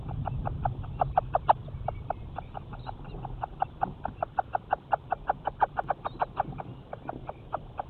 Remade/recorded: recorded